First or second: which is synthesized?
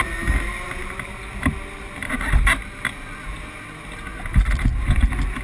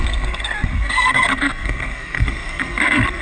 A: second